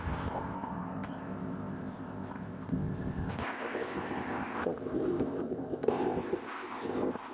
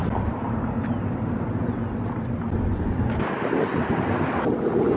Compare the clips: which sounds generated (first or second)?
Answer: first